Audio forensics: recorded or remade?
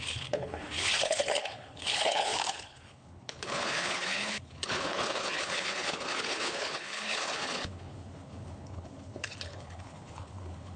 remade